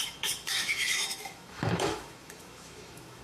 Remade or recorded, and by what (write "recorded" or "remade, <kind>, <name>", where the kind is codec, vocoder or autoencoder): remade, autoencoder, DAC-VAE